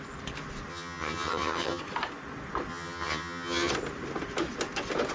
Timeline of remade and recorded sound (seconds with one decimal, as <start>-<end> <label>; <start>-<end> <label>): 0.0-0.7 recorded; 0.7-1.8 remade; 1.8-2.7 recorded; 2.7-3.7 remade; 3.7-5.1 recorded